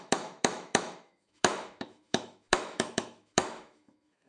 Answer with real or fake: fake